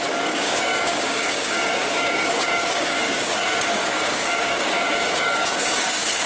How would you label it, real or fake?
fake